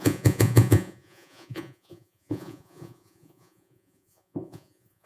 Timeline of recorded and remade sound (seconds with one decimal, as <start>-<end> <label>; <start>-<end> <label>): 0.0-5.1 remade